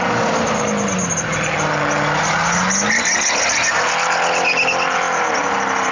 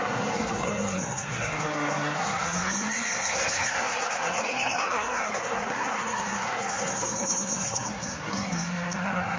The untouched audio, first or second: first